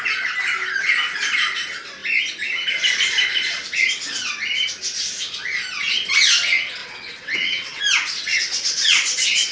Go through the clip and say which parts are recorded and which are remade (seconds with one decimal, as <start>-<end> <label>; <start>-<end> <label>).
0.0-6.8 recorded; 6.8-7.8 remade; 7.8-8.3 recorded; 8.3-9.5 remade